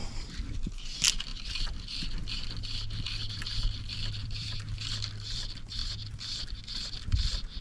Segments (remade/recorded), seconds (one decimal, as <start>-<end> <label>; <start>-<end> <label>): 0.0-0.8 remade; 0.8-4.2 recorded; 4.2-5.1 remade; 5.1-5.8 recorded; 5.8-6.6 remade; 6.6-7.6 recorded